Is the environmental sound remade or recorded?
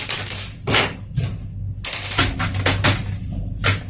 recorded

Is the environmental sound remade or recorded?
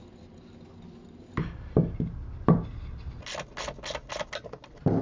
recorded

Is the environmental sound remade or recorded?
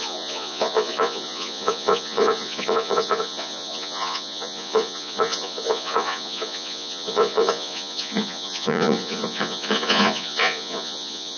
remade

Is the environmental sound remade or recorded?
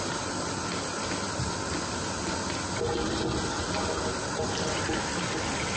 recorded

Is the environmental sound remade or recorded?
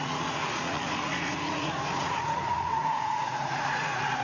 remade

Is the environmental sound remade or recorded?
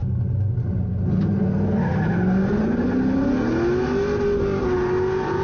recorded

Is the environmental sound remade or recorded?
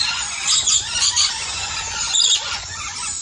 remade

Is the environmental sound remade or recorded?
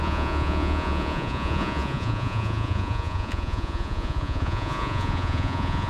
remade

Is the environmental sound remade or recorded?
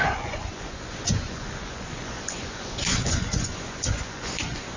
remade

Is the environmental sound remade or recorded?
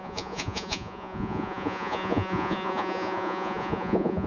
remade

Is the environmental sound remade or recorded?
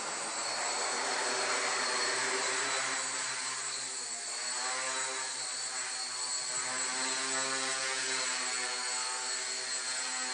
recorded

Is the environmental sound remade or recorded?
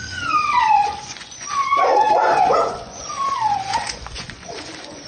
remade